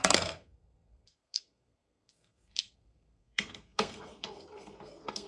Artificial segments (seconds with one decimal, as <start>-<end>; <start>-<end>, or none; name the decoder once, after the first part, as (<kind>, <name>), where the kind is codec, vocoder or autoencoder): 0.0-5.3 (codec, SNAC)